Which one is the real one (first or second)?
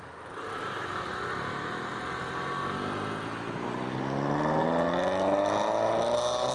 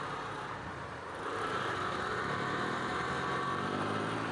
first